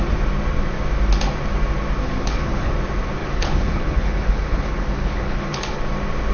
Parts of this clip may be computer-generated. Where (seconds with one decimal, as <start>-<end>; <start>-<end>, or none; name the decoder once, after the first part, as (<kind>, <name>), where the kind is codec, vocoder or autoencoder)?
2.0-2.7 (codec, HILCodec); 3.2-5.8